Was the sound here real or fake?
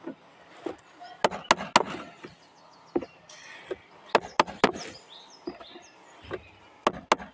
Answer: real